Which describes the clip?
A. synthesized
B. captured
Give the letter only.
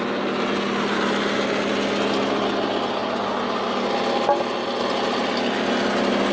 B